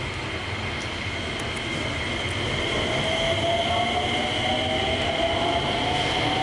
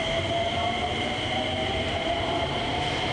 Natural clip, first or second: first